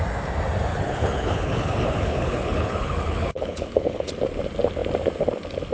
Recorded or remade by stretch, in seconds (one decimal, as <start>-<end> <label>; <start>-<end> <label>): 0.0-0.7 recorded; 0.7-4.1 remade; 4.1-5.7 recorded